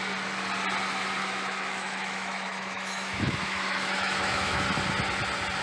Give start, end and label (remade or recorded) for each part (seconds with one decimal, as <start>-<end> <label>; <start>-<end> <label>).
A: 0.0-1.2 recorded; 1.2-4.6 remade; 4.6-5.6 recorded